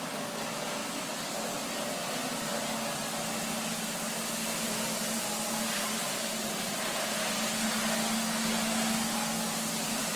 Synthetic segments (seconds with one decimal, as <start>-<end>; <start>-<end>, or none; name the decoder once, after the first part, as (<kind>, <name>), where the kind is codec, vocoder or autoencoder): 4.4-6.8 (vocoder, BigVGAN v2)